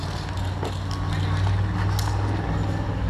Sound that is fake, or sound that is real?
real